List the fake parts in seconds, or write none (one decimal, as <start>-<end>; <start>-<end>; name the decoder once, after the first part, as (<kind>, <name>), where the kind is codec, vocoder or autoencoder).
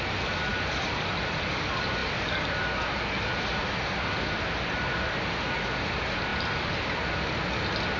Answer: 0.5-1.0 (vocoder, BigVGAN v2)